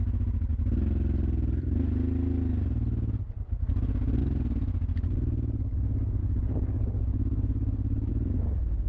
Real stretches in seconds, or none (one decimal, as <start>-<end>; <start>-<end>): 0.0-6.2; 8.1-8.9